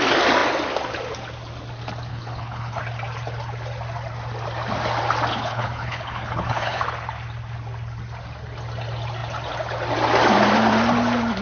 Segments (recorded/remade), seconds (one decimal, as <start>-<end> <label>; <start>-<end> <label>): 0.0-2.1 recorded; 2.1-2.8 remade; 2.8-5.3 recorded; 5.3-6.8 remade; 6.8-11.4 recorded